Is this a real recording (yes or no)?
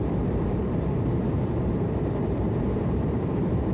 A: no